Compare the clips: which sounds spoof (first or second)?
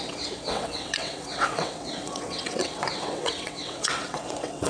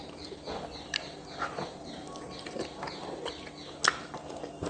first